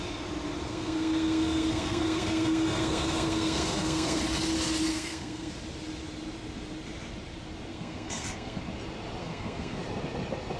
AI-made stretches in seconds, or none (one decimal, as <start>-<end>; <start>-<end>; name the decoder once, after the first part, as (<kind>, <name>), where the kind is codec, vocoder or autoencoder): 0.7-4.2 (codec, SNAC); 4.9-5.5; 7.7-8.6; 9.2-9.8